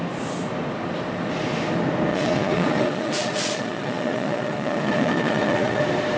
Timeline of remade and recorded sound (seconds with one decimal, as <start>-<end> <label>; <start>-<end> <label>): 0.0-2.1 recorded; 2.1-5.8 remade; 5.8-6.2 recorded